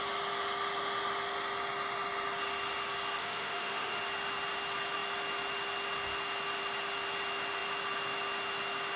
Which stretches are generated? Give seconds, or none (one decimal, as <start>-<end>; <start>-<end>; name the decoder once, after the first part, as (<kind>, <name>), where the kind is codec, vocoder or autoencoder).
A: 3.2-4.0 (autoencoder, DAC-VAE)